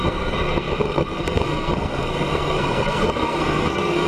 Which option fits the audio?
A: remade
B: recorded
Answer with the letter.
A